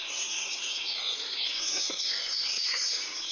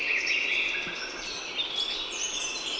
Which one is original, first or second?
second